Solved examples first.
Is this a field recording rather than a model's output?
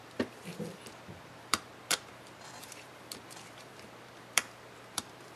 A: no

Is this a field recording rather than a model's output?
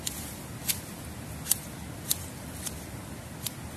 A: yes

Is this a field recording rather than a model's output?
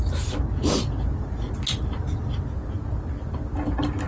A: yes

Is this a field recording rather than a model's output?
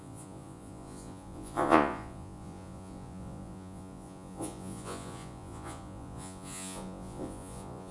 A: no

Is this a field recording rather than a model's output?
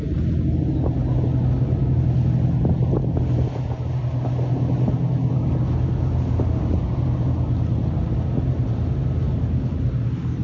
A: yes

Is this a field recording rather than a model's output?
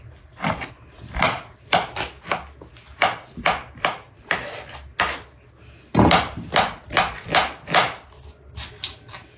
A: yes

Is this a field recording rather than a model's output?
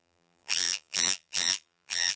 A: no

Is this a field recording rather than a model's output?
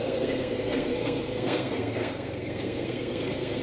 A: no